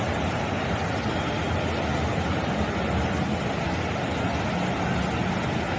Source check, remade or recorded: recorded